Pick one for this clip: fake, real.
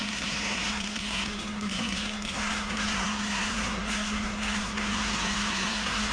fake